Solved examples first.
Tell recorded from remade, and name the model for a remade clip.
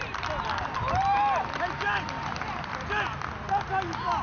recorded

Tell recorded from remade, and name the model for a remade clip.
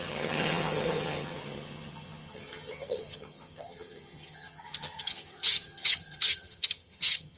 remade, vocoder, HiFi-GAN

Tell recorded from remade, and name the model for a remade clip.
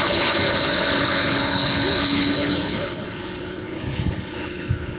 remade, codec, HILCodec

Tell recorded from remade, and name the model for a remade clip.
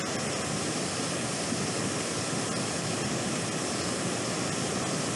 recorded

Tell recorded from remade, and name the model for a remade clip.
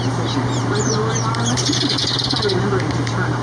remade, vocoder, BigVGAN v2